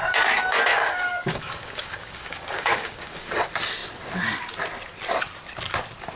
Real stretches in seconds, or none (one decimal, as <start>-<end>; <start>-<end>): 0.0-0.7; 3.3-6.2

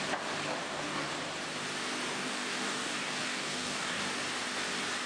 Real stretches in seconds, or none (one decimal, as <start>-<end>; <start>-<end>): 0.0-0.6; 1.1-2.1; 4.0-5.1

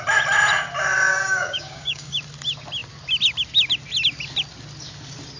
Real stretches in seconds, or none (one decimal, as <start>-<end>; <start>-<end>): 0.0-1.1; 2.1-5.4

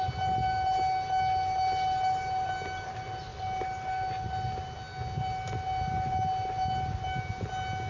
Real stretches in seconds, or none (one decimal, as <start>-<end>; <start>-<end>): 0.0-7.9